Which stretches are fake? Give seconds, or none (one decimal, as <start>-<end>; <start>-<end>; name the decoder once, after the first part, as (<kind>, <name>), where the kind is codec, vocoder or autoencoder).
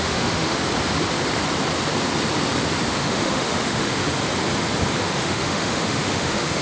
0.0-0.6 (autoencoder, DAC-VAE); 3.0-4.0; 5.0-6.6